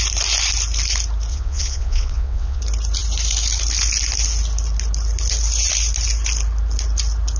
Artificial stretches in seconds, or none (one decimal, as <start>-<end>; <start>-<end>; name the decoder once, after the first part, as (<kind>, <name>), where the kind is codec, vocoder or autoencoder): 1.3-2.6 (vocoder, WaveNeXt)